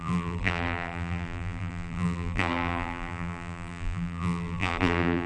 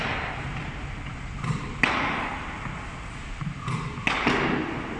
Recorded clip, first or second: second